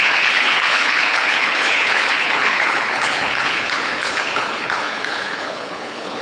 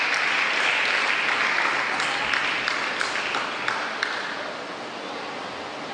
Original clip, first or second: second